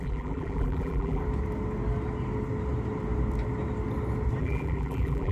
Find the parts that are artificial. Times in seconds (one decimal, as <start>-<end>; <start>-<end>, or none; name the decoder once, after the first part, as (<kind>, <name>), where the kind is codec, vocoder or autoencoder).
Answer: 0.0-1.2 (vocoder, BigVGAN v2); 4.4-5.3